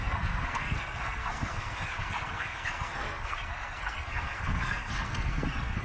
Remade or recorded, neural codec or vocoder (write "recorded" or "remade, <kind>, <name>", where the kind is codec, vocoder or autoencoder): remade, codec, SNAC